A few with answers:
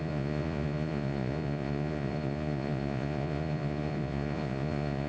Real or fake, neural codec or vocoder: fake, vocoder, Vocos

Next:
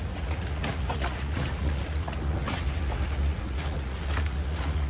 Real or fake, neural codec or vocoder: fake, vocoder, Vocos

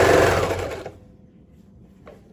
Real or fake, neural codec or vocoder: real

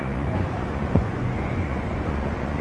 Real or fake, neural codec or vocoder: fake, vocoder, Vocos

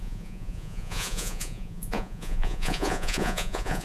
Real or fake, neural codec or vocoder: fake, vocoder, Vocos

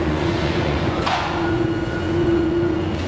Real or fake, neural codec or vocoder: fake, vocoder, Vocos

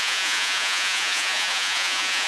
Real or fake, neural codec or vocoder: fake, vocoder, Vocos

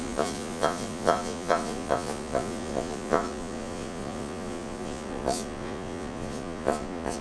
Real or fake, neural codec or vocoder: fake, vocoder, Vocos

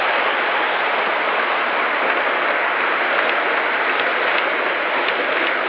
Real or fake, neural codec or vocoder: real